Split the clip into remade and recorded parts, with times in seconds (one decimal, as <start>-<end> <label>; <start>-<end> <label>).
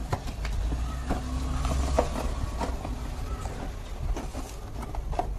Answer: 0.0-5.4 recorded